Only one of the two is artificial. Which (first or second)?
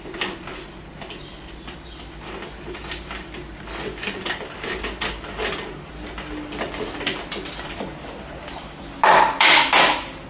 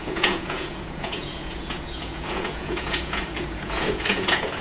second